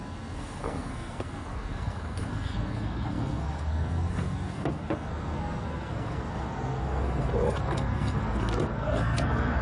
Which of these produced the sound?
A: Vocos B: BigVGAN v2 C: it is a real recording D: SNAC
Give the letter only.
D